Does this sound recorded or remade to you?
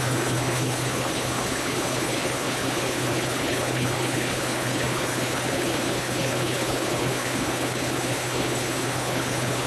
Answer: remade